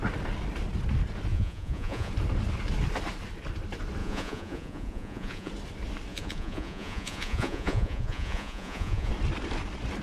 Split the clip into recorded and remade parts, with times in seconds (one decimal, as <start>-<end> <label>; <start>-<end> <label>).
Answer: 0.0-1.3 recorded; 1.3-2.1 remade; 2.1-4.0 recorded; 4.0-5.5 remade; 5.5-6.1 recorded; 6.1-9.1 remade; 9.1-10.0 recorded